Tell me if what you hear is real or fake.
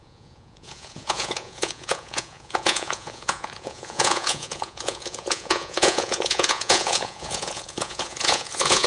fake